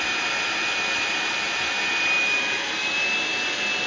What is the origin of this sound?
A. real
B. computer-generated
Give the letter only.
A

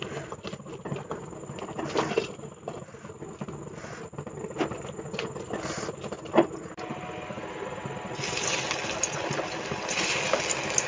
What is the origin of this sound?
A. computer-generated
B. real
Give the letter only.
B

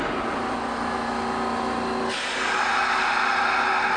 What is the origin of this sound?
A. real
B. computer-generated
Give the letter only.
A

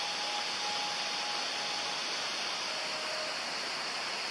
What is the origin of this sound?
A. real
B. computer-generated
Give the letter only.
A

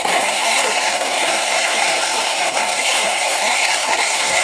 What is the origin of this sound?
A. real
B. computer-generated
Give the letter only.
B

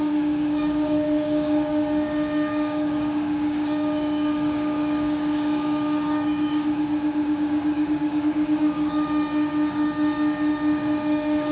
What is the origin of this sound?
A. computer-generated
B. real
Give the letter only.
A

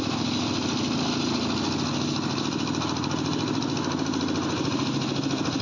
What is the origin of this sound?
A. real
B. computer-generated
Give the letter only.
A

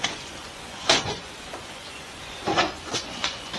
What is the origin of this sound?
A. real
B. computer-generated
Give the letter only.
B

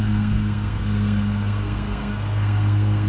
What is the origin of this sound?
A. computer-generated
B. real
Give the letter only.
A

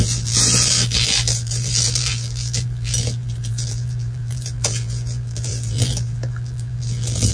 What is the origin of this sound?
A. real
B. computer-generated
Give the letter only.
B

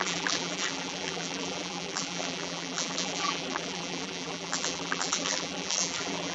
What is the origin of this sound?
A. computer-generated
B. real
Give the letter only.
A